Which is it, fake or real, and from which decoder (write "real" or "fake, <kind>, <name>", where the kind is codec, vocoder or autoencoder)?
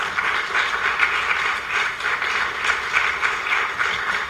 real